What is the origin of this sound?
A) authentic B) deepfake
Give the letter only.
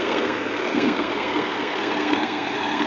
B